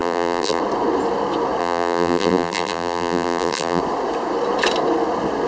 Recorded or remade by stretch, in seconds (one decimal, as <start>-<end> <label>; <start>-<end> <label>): 0.0-0.6 remade; 0.6-1.6 recorded; 1.6-3.8 remade; 3.8-5.5 recorded